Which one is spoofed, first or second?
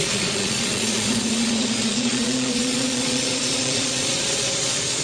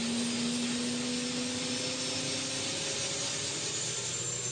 first